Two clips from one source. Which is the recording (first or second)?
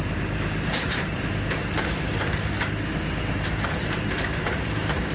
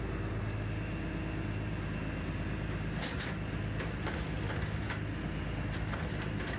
second